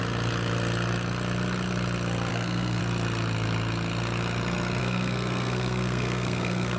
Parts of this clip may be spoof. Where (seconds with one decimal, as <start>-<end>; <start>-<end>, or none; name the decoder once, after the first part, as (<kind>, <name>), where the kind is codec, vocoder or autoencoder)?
2.3-2.8 (codec, SNAC); 4.8-6.8

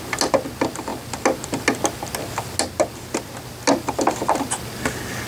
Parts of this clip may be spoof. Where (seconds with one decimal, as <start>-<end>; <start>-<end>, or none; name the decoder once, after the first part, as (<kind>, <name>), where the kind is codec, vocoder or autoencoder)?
none

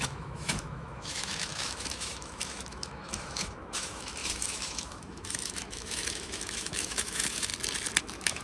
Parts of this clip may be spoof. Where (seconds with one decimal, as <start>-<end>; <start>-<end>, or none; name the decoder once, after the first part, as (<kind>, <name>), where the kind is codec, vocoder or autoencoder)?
0.0-7.5 (autoencoder, DAC-VAE); 8.0-8.4

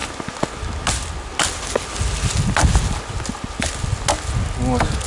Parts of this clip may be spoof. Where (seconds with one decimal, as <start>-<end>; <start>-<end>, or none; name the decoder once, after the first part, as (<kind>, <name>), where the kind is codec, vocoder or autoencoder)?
none

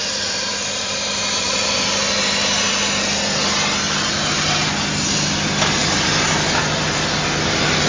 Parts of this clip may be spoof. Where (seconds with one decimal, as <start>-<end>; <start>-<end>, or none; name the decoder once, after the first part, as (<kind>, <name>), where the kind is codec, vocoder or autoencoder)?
none